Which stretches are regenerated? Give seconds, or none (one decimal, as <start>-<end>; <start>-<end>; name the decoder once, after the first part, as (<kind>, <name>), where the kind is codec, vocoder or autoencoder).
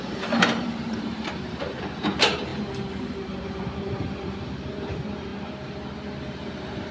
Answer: 0.0-2.5 (vocoder, BigVGAN v2); 3.0-6.9